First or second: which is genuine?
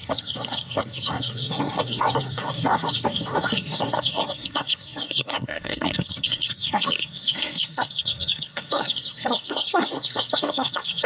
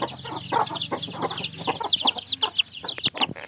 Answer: second